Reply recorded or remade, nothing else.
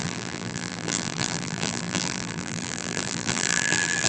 remade